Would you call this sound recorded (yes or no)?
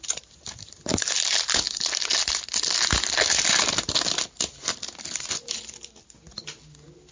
yes